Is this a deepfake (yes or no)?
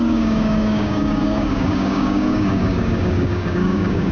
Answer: yes